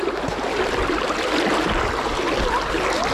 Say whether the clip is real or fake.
real